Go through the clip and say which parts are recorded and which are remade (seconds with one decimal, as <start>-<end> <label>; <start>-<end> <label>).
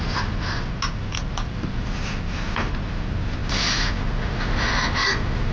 0.0-1.2 recorded; 1.2-1.8 remade; 1.8-5.5 recorded